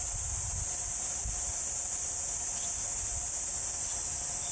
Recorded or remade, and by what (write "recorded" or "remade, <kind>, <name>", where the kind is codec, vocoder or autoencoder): recorded